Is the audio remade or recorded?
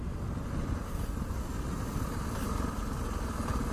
recorded